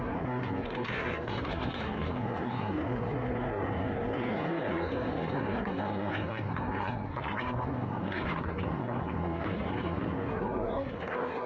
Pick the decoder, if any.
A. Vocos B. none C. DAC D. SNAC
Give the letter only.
D